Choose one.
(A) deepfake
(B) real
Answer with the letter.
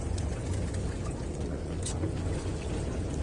A